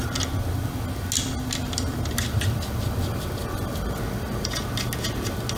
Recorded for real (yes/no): yes